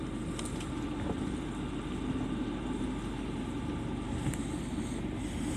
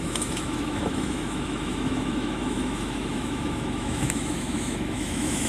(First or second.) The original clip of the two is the first